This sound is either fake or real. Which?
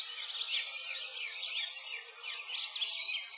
real